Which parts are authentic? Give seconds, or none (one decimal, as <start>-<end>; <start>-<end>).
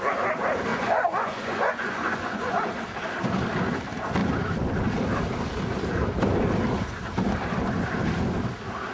0.0-0.7; 2.7-8.9